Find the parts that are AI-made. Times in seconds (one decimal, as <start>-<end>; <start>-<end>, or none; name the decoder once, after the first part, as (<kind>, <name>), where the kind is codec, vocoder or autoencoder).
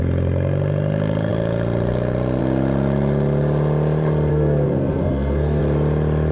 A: 4.3-5.6 (codec, SNAC)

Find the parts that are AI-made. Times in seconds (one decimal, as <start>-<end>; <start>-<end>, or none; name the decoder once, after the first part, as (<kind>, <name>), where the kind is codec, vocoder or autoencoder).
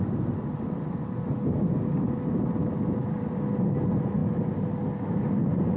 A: none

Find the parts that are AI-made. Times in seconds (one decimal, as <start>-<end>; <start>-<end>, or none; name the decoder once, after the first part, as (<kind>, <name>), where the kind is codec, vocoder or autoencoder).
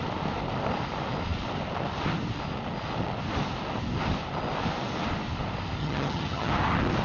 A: 5.8-6.5 (vocoder, HiFi-GAN)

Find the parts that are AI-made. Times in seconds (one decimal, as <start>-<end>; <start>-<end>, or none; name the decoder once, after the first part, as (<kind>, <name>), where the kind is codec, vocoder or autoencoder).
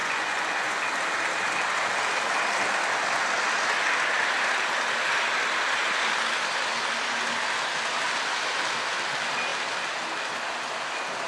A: 0.0-0.8 (vocoder, Vocos)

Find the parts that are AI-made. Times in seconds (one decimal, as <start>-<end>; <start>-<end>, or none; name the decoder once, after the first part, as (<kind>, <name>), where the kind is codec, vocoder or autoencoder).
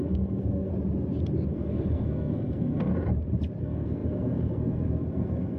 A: 0.0-0.7 (codec, SNAC); 1.5-2.9; 3.6-5.6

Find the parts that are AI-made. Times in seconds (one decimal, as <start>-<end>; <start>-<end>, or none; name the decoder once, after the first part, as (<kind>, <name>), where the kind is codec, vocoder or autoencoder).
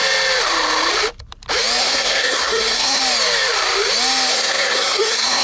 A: 1.8-3.0 (codec, SNAC); 4.3-5.4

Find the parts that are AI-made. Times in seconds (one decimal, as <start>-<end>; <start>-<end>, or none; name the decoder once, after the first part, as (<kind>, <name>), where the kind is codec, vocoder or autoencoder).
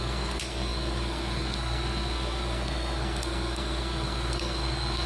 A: 0.0-5.1 (codec, SNAC)